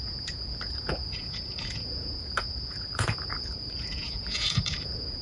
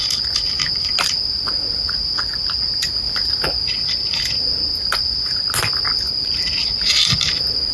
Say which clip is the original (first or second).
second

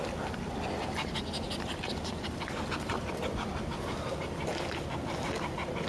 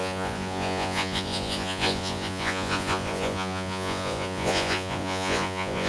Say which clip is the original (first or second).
first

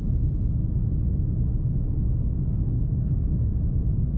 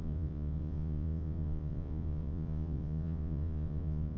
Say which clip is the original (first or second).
first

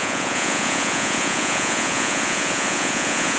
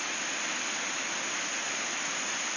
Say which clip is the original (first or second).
second